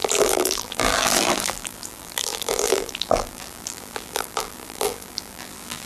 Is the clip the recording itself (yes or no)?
no